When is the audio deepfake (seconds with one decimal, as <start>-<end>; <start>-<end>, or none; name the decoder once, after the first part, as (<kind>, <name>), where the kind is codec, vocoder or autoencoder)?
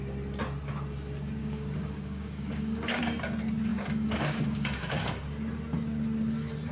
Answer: 1.4-3.0 (codec, DAC); 3.7-5.1